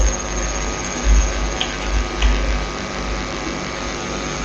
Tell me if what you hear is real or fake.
real